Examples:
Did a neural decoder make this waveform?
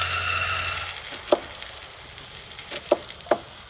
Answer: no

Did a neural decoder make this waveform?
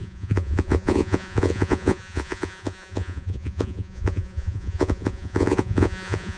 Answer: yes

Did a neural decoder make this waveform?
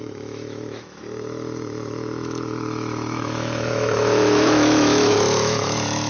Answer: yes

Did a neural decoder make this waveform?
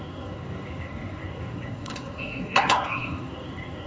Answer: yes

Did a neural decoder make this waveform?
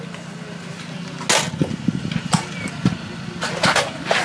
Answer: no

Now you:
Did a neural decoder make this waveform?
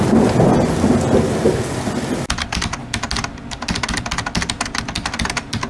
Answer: no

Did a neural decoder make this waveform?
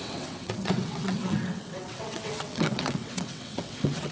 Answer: yes